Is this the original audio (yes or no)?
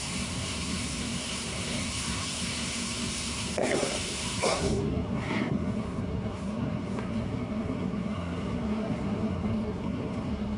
no